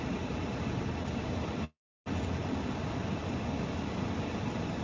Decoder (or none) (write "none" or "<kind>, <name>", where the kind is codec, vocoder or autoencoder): none